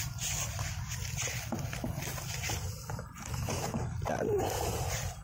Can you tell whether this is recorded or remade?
recorded